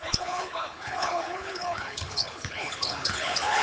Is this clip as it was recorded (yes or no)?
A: no